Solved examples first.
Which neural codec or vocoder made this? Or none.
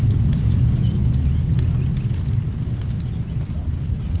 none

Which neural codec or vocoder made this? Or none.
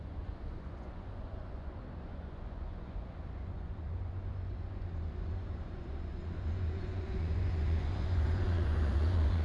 vocoder, Vocos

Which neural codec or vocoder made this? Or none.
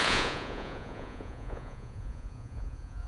vocoder, Vocos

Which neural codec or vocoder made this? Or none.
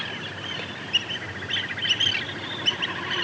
none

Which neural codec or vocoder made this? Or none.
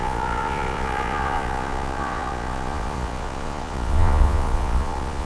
vocoder, Vocos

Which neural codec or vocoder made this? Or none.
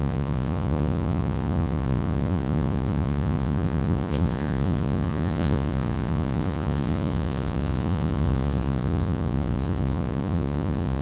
vocoder, Vocos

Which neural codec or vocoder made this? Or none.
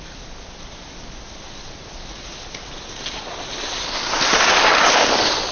none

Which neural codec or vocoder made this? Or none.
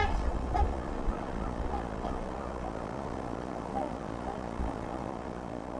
vocoder, Vocos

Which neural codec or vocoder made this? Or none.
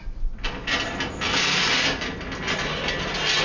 none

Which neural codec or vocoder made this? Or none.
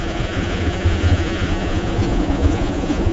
vocoder, Vocos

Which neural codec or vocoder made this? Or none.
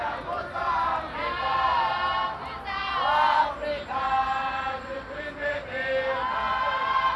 none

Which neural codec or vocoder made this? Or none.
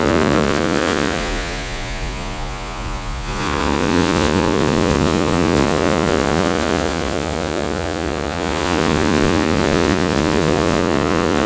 vocoder, Vocos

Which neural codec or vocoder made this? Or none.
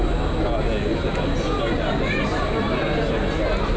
none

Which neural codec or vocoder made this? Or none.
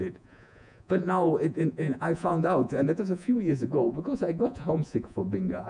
vocoder, Vocos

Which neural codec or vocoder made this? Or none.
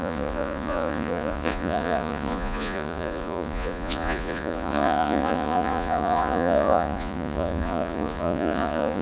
vocoder, Vocos